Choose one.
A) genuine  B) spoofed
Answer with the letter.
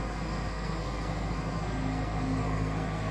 B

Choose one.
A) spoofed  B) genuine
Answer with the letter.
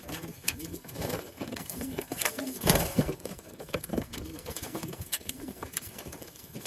A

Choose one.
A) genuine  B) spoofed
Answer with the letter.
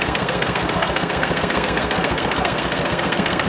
B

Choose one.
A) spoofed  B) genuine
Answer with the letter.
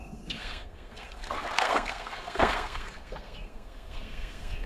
A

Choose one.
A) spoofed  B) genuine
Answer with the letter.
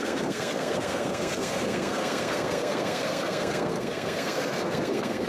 A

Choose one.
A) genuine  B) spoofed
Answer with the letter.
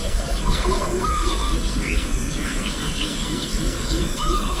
B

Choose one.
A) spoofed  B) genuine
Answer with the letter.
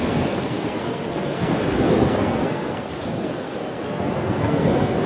A